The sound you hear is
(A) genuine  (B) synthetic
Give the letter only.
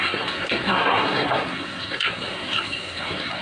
B